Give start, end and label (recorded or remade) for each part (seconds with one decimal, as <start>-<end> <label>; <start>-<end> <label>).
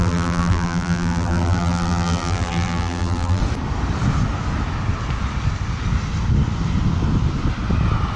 0.0-3.4 remade; 3.4-8.2 recorded